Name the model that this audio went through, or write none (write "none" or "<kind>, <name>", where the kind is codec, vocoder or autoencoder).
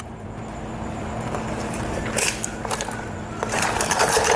vocoder, BigVGAN v2